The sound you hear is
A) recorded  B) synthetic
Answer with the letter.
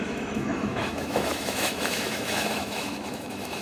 B